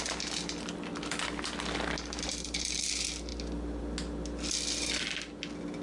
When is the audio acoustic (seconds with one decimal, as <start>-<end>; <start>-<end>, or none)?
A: 0.0-3.3; 3.8-5.8